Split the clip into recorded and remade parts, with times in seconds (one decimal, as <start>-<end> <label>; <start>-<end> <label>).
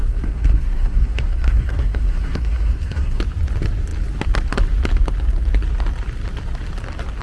0.0-3.2 remade; 3.2-7.2 recorded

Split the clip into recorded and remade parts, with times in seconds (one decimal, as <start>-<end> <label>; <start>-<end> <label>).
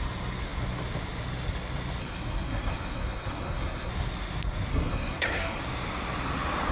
0.0-2.0 recorded; 2.0-3.9 remade; 3.9-4.7 recorded; 4.7-5.6 remade; 5.6-6.7 recorded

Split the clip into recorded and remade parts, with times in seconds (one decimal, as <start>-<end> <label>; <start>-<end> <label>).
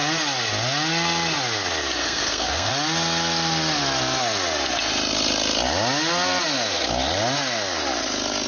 0.0-2.0 recorded; 2.0-2.7 remade; 2.7-8.5 recorded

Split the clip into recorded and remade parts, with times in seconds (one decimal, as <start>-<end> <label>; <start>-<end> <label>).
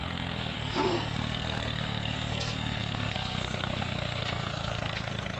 0.0-5.4 remade